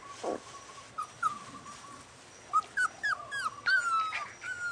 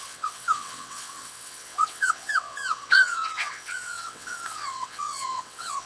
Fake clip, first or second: second